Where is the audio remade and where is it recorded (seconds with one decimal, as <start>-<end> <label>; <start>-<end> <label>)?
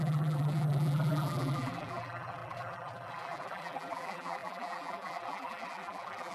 0.0-6.3 remade